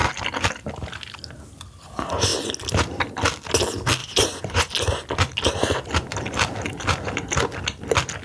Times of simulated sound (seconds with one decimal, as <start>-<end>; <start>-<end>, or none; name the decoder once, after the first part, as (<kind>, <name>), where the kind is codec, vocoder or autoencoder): 4.0-4.7 (vocoder, Vocos)